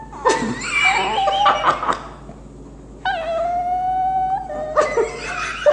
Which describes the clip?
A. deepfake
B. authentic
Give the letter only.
B